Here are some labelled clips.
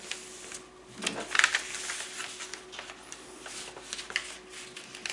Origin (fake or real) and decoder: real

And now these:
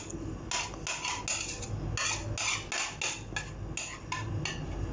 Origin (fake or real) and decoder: real